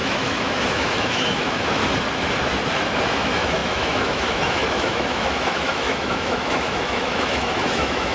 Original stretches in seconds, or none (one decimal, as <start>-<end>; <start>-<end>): 1.8-3.1